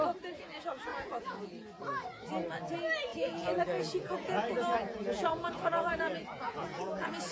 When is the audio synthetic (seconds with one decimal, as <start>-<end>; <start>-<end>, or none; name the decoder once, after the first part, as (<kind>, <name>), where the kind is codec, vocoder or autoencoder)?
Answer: 0.9-1.5 (vocoder, Vocos); 3.1-7.3